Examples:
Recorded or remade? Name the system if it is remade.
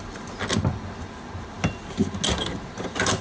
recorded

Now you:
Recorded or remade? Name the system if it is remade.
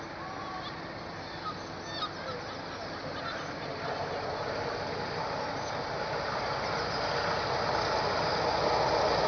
recorded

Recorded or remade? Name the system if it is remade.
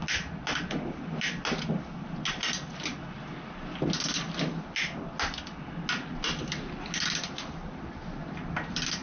recorded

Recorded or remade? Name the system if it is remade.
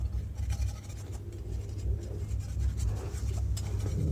recorded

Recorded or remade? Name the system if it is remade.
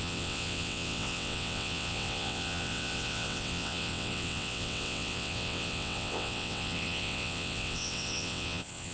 remade, vocoder, WaveNeXt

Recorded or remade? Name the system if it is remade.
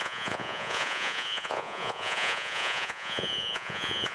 remade, vocoder, Vocos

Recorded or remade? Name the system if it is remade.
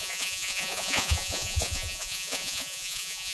remade, vocoder, Vocos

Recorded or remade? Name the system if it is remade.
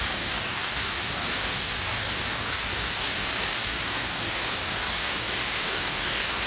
remade, codec, DAC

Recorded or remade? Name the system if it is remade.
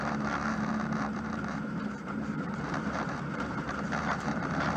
remade, vocoder, BigVGAN v2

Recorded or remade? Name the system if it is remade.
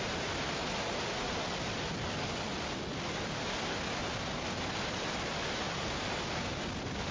recorded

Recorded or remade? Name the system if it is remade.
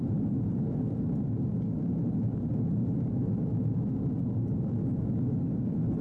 recorded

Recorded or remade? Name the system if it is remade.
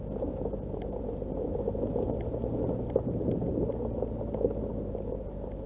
recorded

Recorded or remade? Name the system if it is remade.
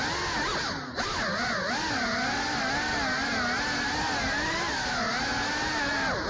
recorded